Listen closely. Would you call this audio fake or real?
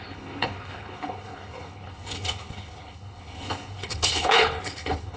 fake